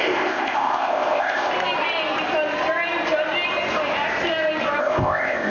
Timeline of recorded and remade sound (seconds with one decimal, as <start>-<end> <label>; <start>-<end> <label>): 0.0-1.5 remade; 1.5-4.8 recorded; 4.8-5.5 remade